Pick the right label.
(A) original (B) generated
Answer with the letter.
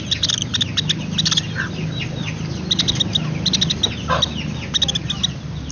A